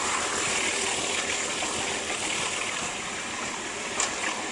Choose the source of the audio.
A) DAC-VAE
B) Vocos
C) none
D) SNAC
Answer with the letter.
C